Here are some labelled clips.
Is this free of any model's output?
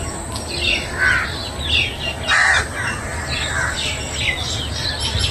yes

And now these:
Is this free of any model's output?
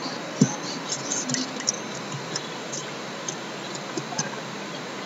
yes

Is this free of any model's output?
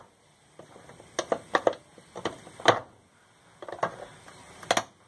yes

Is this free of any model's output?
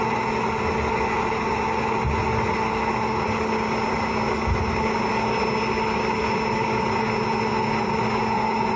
yes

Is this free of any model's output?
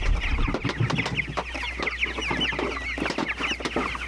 yes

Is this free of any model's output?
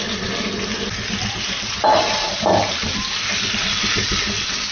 yes